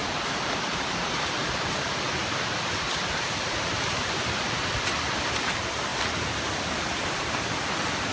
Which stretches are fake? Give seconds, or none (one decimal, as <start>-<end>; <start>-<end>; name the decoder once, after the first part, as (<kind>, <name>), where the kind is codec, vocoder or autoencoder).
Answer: 0.0-5.9 (vocoder, BigVGAN v2); 6.5-8.1